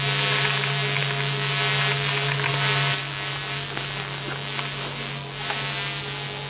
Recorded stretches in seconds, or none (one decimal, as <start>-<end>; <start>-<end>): 0.0-6.5